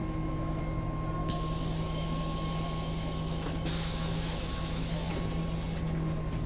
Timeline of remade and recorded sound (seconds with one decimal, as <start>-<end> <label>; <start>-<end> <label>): 0.0-0.6 remade; 0.6-1.2 recorded; 1.2-5.1 remade; 5.1-6.5 recorded